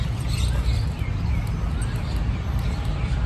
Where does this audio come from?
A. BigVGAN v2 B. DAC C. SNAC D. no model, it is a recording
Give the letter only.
D